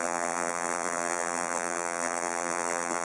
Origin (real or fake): fake